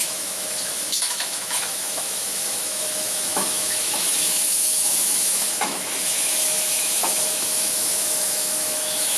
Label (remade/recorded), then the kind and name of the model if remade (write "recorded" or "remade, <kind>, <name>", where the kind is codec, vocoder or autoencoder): remade, autoencoder, DAC-VAE